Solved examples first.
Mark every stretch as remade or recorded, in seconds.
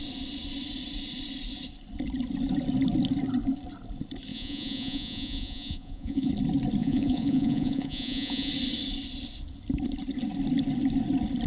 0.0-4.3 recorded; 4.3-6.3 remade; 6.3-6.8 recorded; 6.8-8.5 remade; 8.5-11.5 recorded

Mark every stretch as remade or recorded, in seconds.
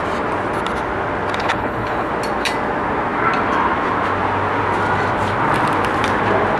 0.0-1.4 recorded; 1.4-2.1 remade; 2.1-6.6 recorded